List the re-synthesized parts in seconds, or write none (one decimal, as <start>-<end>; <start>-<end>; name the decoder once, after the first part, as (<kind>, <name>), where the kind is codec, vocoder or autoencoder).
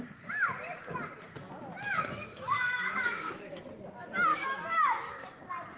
2.3-3.6 (autoencoder, DAC-VAE); 4.3-5.1